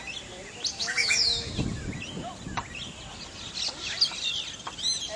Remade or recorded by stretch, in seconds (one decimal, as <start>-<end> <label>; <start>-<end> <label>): 0.0-0.8 recorded; 0.8-1.5 remade; 1.5-5.2 recorded